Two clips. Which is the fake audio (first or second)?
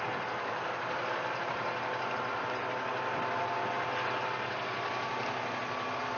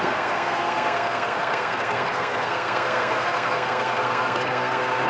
second